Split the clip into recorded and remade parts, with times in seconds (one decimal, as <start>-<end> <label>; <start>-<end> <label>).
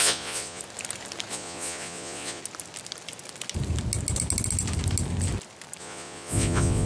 0.0-0.6 remade; 0.6-1.3 recorded; 1.3-2.4 remade; 2.4-5.8 recorded; 5.8-6.9 remade